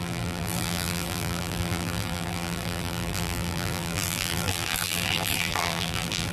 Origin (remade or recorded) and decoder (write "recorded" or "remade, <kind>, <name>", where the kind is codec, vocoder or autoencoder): remade, vocoder, BigVGAN v2